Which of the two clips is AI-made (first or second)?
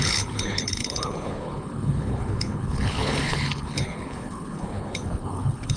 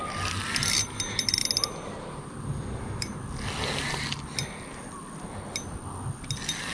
first